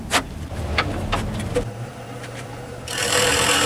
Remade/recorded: remade